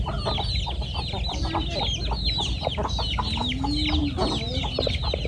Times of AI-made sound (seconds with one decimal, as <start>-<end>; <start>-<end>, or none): none